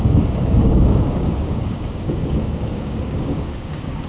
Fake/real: fake